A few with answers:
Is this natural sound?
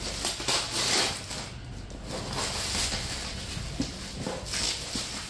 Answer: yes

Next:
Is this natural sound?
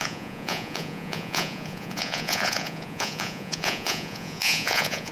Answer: no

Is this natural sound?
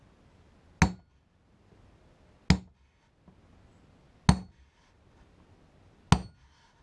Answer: yes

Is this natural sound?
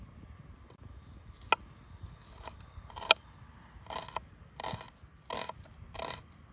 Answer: yes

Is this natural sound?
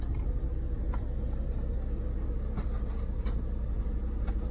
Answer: yes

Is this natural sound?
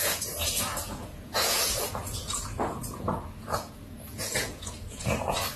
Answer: no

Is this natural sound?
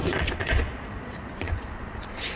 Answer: no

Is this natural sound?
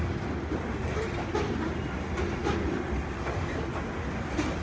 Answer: yes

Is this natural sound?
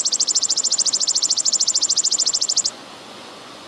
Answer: no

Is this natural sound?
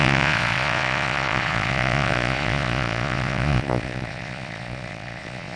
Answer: no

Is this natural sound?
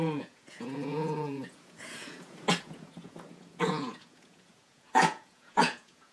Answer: no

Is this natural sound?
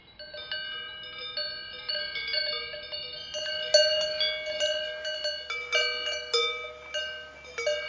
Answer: yes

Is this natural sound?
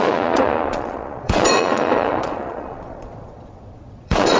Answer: no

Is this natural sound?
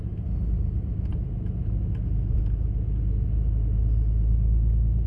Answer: yes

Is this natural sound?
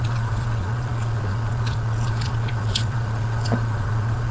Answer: no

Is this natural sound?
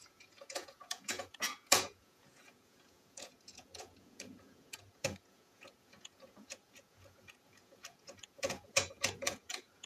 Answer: no